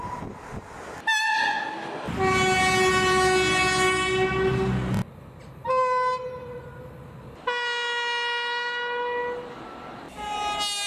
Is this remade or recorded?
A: recorded